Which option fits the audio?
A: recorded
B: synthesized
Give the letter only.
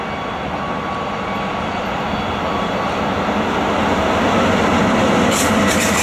A